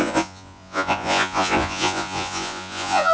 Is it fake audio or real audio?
fake